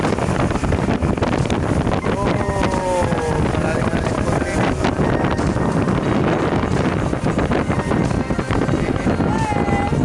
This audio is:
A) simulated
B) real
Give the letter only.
B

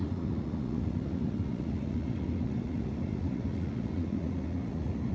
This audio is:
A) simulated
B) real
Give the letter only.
A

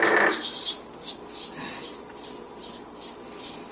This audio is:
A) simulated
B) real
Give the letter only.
B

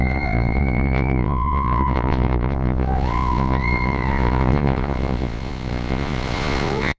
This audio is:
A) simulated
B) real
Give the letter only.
A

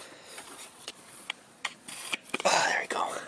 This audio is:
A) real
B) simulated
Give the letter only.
B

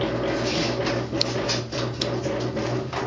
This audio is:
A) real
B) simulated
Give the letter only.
A